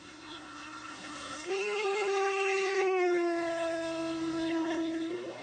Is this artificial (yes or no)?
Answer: yes